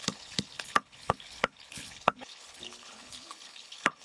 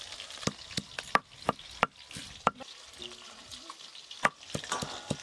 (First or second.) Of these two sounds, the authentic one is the second